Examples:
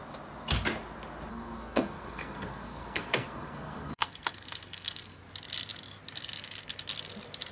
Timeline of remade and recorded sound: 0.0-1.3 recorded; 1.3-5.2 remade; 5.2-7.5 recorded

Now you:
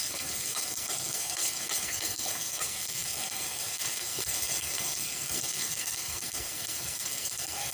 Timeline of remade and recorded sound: 0.0-7.7 remade

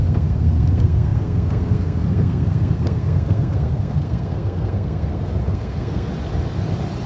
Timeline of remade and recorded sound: 0.0-6.1 remade; 6.1-7.1 recorded

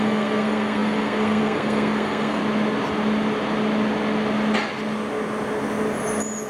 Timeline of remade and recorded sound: 0.0-2.4 remade; 2.4-6.5 recorded

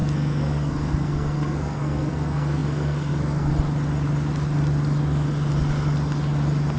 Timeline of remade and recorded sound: 0.0-3.5 remade; 3.5-6.8 recorded